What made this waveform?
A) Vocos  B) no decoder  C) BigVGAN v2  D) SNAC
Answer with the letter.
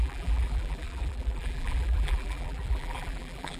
C